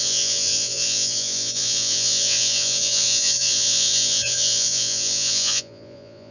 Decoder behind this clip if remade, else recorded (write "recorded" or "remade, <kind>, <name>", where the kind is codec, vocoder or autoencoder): remade, vocoder, Vocos